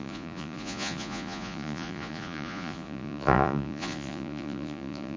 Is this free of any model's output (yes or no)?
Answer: no